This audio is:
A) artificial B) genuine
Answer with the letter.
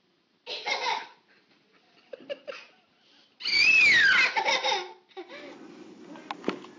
B